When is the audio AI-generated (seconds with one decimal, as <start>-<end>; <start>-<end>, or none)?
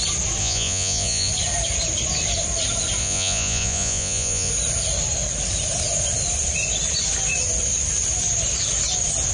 0.4-1.3; 3.0-4.5